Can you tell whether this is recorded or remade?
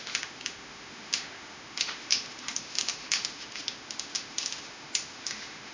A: remade